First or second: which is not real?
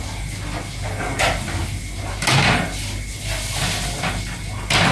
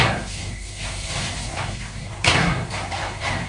second